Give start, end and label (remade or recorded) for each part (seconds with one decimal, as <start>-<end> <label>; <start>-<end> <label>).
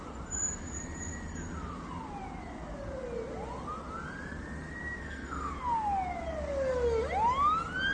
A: 0.0-5.0 recorded; 5.0-5.5 remade; 5.5-7.9 recorded